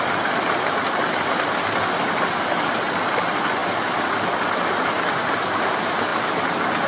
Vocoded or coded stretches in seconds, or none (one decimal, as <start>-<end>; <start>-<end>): none